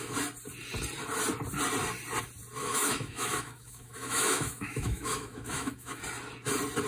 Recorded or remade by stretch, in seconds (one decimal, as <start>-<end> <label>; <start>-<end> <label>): 0.0-2.6 recorded; 2.6-6.0 remade; 6.0-6.9 recorded

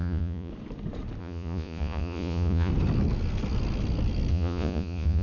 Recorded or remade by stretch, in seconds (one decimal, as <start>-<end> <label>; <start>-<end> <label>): 0.0-0.5 remade; 0.5-1.2 recorded; 1.2-2.7 remade; 2.7-4.3 recorded; 4.3-5.2 remade

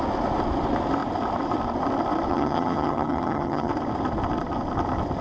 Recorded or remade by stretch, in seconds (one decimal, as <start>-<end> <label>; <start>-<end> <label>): 0.0-2.3 recorded; 2.3-3.7 remade; 3.7-5.2 recorded

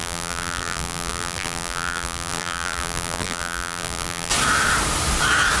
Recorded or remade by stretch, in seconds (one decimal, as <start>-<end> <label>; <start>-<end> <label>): 0.0-4.3 remade; 4.3-5.6 recorded

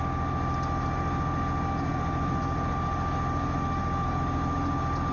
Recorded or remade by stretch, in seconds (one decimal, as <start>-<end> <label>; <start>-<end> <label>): 0.0-5.1 recorded

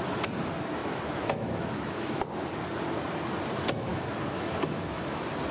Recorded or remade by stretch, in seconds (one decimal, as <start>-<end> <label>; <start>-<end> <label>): 0.0-0.8 recorded; 0.8-2.2 remade; 2.2-3.9 recorded; 3.9-5.0 remade; 5.0-5.5 recorded